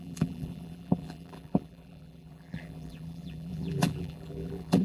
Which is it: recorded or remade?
remade